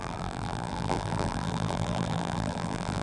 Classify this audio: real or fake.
fake